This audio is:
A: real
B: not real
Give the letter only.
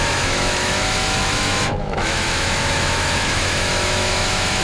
B